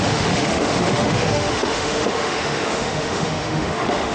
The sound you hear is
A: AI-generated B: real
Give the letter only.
A